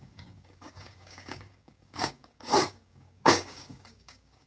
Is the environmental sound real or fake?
fake